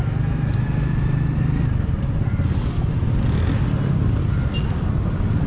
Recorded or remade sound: recorded